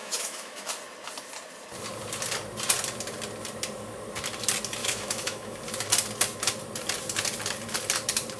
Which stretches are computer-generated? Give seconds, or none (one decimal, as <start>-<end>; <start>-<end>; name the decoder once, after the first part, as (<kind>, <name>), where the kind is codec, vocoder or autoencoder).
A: 0.0-0.7 (autoencoder, DAC-VAE); 4.8-5.6